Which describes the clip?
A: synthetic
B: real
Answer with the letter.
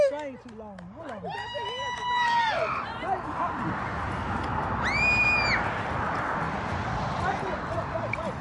B